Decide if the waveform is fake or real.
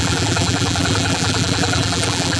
fake